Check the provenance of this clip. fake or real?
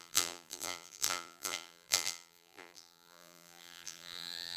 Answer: fake